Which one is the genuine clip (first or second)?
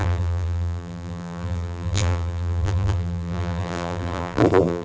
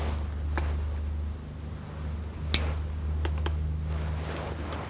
second